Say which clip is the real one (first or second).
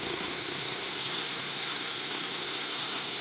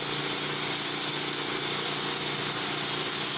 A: second